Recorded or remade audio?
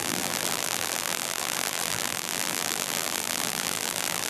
remade